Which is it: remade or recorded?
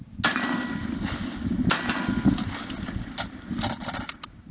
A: recorded